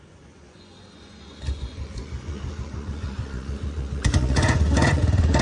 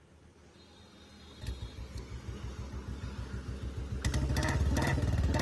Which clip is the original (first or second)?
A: second